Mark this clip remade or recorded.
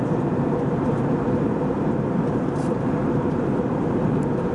remade